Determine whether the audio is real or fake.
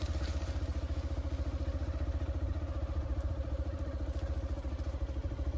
real